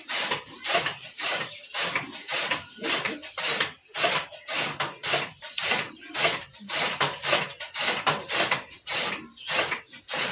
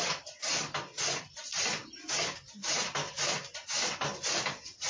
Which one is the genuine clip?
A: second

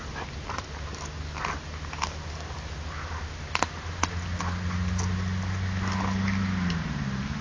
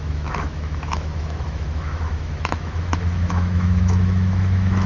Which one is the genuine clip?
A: first